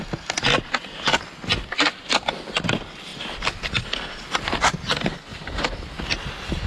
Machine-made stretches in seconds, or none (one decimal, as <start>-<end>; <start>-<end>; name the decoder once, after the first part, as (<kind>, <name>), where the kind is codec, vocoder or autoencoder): 3.1-4.5 (vocoder, BigVGAN v2); 5.3-6.0